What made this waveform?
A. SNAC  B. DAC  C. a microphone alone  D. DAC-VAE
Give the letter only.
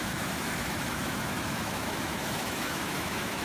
D